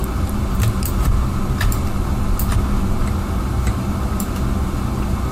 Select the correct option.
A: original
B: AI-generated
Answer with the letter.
A